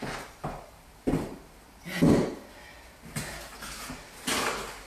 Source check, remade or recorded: recorded